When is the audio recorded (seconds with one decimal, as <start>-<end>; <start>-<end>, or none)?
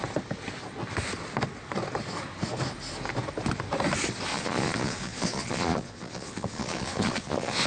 0.0-4.3